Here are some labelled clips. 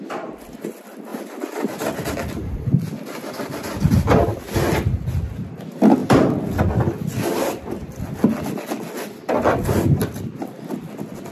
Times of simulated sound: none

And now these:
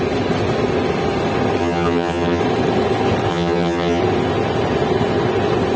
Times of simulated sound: 1.6-2.4 (vocoder, HiFi-GAN); 3.3-4.0

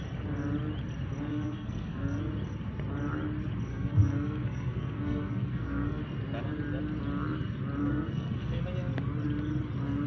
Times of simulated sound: 1.3-2.2 (codec, SNAC); 3.7-6.0; 7.8-8.6

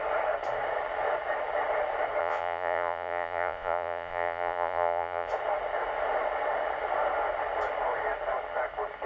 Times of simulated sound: 2.2-5.3 (vocoder, Vocos)

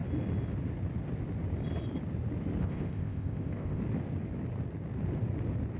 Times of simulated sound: 2.6-3.8 (codec, ZipCodec)